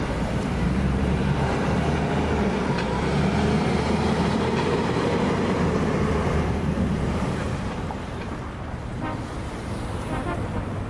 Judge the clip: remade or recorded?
remade